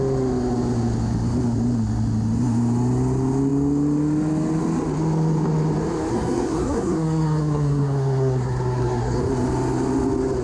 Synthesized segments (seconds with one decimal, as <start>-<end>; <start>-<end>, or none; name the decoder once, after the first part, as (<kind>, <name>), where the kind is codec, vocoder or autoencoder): 6.1-9.2 (codec, SNAC)